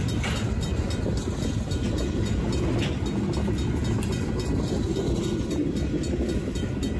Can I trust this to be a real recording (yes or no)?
yes